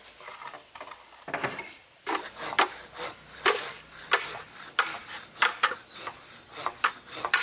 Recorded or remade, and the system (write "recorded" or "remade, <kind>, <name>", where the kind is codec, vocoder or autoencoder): recorded